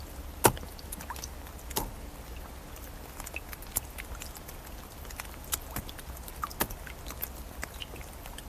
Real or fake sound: real